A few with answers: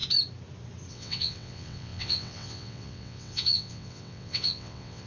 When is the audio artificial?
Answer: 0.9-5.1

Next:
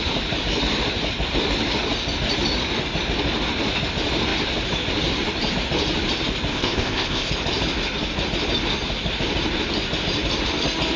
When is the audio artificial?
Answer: 6.5-7.3

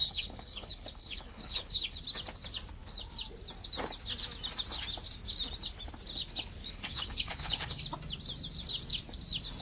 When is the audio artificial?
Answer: 0.0-2.0; 6.6-7.8

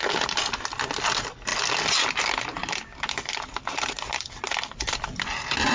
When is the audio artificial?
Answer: none